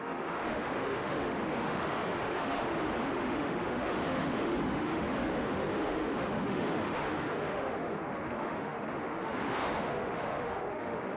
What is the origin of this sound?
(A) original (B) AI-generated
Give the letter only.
B